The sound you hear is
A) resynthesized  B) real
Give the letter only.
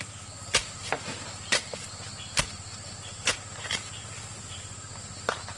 B